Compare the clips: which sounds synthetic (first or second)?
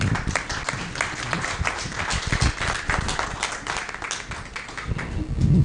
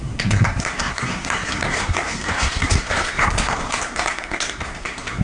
second